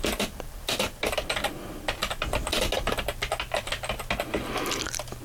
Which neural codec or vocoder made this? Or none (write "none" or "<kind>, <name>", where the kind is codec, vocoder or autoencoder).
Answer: none